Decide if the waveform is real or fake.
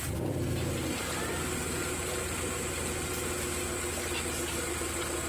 real